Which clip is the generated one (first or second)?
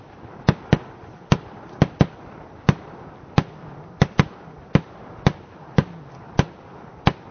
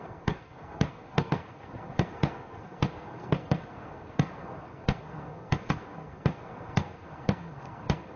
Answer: second